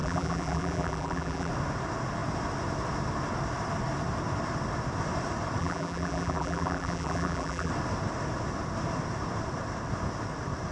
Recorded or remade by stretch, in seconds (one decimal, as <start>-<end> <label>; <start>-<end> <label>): 0.0-1.5 remade; 1.5-5.6 recorded; 5.6-7.7 remade; 7.7-10.7 recorded